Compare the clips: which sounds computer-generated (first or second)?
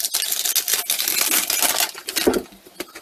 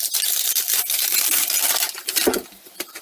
second